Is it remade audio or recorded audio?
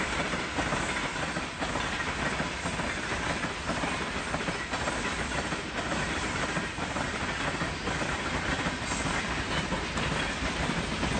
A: recorded